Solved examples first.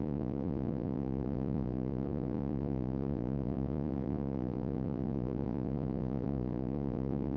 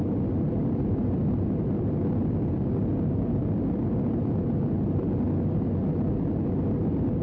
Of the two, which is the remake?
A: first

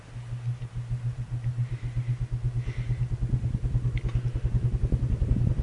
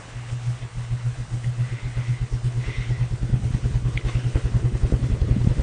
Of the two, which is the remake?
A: second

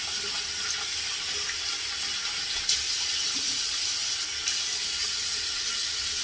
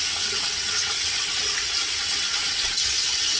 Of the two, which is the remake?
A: second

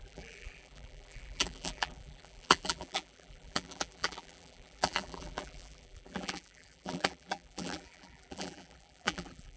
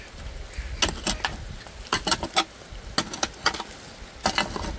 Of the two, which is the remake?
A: first